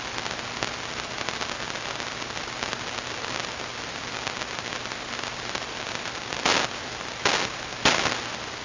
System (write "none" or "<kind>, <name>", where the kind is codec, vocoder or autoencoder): none